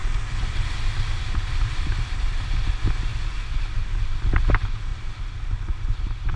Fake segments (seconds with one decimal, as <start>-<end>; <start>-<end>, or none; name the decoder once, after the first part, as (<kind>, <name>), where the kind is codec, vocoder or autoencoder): 1.5-3.1 (vocoder, BigVGAN v2); 3.6-4.9; 5.8-6.4